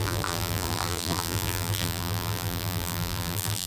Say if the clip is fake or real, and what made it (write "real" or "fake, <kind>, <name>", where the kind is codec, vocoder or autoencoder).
fake, vocoder, BigVGAN v2